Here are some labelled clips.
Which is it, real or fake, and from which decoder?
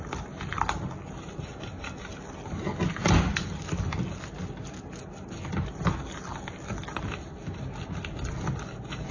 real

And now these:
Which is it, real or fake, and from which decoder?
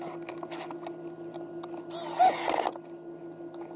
real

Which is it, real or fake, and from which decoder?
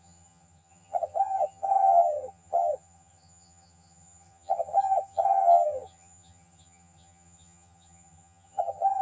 fake, vocoder, HiFi-GAN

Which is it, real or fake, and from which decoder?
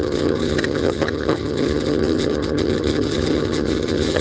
fake, vocoder, HiFi-GAN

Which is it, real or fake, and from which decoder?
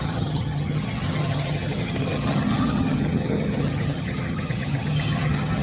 fake, vocoder, HiFi-GAN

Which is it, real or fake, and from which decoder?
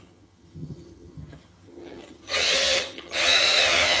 fake, vocoder, HiFi-GAN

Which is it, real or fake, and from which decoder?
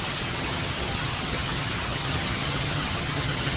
fake, vocoder, HiFi-GAN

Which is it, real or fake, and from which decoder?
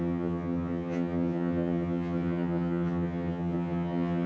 fake, vocoder, HiFi-GAN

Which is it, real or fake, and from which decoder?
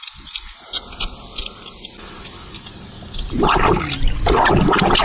real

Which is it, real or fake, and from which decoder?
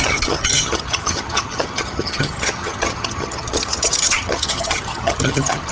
fake, vocoder, HiFi-GAN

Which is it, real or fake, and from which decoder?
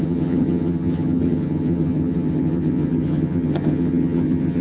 fake, vocoder, HiFi-GAN